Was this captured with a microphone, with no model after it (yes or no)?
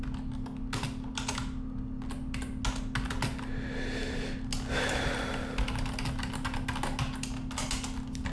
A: yes